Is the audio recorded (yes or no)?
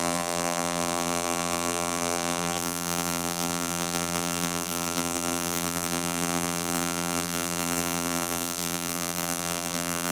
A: no